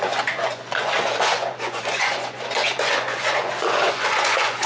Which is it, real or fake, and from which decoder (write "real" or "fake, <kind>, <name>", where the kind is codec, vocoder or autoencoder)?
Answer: fake, vocoder, Vocos